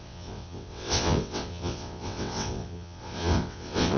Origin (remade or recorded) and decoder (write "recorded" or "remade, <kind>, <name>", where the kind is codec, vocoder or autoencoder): remade, vocoder, WaveNeXt